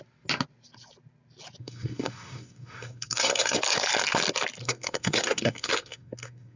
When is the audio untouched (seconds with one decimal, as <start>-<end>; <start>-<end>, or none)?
0.0-1.6; 3.6-4.6